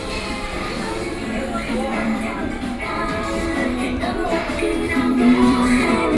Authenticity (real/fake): fake